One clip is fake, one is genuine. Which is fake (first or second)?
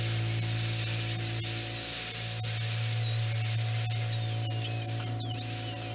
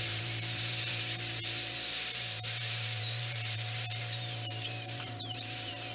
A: second